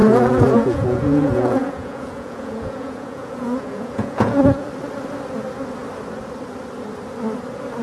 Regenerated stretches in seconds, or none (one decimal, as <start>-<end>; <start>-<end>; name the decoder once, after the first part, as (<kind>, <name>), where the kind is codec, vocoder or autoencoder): 0.0-4.7 (vocoder, Vocos)